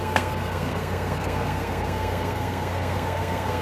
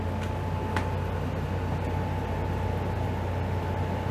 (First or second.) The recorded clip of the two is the second